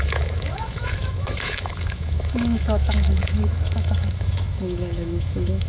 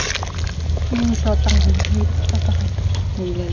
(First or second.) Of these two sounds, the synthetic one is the first